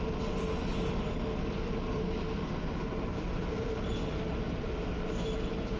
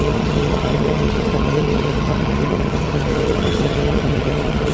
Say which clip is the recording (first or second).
first